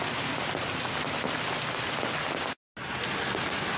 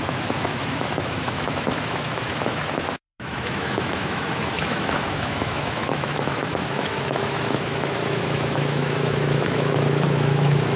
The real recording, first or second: first